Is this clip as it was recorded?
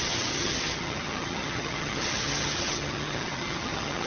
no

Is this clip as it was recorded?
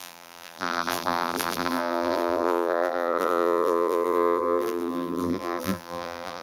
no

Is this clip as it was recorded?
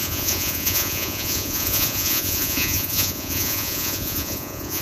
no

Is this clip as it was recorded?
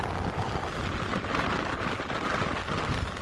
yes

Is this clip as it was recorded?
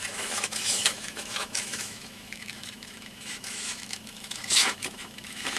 no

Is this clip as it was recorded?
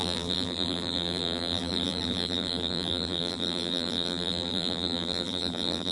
no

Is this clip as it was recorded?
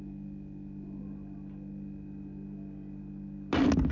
yes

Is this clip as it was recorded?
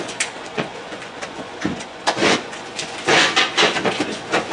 no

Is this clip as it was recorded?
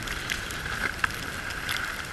no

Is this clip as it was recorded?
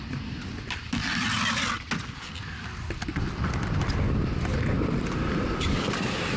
yes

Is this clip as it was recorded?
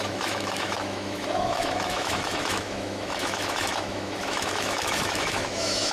no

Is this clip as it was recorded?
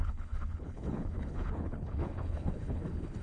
no